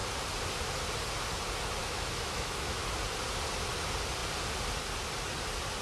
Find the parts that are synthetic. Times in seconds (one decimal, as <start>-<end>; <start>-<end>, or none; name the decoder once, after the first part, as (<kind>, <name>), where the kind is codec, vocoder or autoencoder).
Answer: 1.8-2.9 (autoencoder, DAC-VAE)